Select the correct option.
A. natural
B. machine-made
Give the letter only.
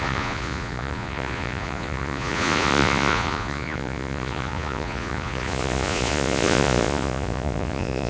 B